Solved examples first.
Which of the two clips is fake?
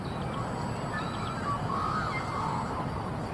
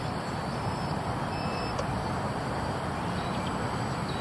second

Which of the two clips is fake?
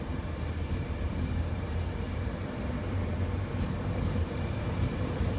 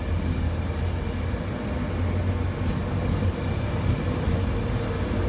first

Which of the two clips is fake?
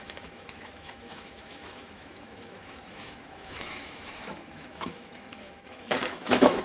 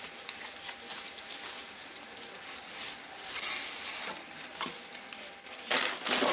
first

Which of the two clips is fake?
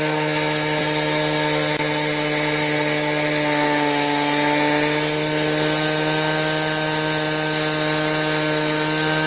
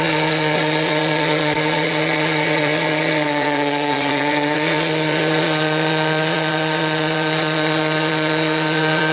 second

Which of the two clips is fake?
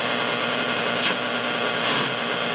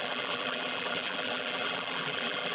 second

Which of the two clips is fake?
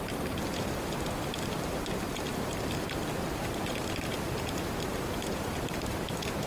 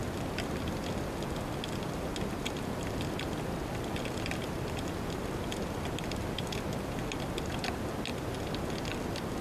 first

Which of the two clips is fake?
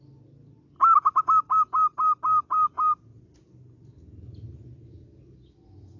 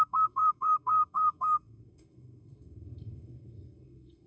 second